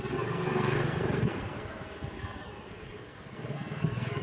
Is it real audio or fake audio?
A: fake